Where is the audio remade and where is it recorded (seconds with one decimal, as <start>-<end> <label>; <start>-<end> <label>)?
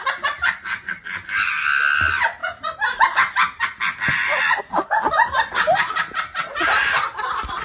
0.0-7.6 recorded